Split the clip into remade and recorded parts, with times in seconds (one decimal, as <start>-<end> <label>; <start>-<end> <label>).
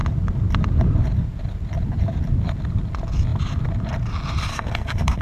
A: 0.0-4.5 recorded; 4.5-5.2 remade